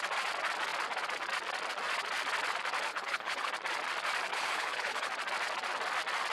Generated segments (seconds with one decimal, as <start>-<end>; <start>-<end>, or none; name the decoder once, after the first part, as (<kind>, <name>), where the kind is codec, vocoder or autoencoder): 2.9-3.5 (codec, HILCodec); 4.3-5.1